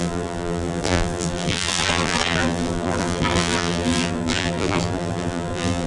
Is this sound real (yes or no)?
no